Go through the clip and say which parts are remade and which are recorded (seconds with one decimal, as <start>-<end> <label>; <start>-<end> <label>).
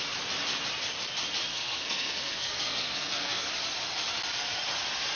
0.0-1.5 recorded; 1.5-3.5 remade; 3.5-5.2 recorded